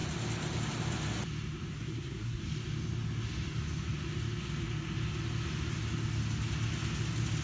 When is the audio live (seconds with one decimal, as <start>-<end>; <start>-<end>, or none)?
0.0-1.7; 2.4-7.4